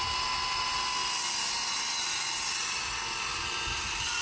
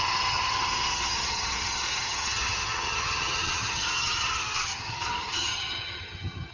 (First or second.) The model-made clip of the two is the second